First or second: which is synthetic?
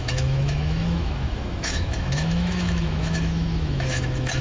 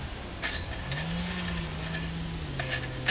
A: first